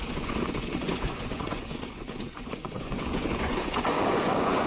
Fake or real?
fake